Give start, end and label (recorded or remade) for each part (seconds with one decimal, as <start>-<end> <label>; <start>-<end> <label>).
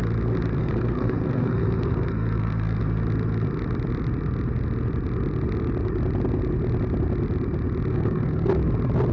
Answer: 0.0-0.6 recorded; 0.6-2.8 remade; 2.8-7.9 recorded; 7.9-8.5 remade; 8.5-9.1 recorded